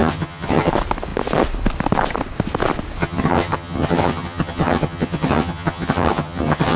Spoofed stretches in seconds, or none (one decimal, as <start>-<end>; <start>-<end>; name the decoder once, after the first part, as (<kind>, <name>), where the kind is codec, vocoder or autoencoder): 0.0-0.7 (vocoder, HiFi-GAN); 3.0-6.8